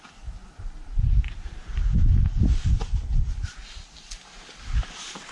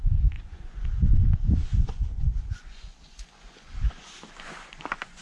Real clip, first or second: first